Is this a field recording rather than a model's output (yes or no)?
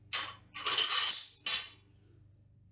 yes